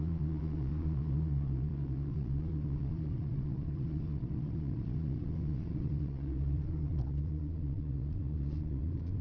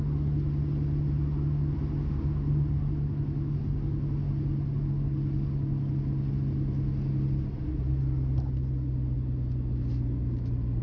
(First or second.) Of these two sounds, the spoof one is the first